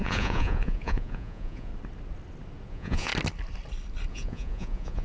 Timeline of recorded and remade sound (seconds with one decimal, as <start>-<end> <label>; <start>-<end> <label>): 0.0-1.7 remade; 1.7-2.7 recorded; 2.7-3.1 remade; 3.1-4.1 recorded; 4.1-5.0 remade